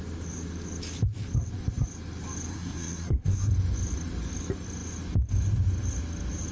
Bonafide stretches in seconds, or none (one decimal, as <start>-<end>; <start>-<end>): 0.0-2.5; 3.5-6.5